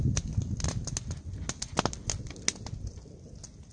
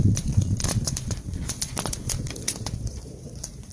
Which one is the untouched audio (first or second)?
first